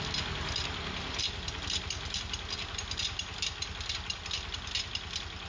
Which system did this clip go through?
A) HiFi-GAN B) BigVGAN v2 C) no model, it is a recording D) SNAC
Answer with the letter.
C